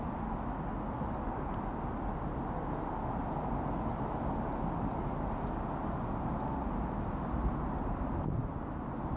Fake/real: real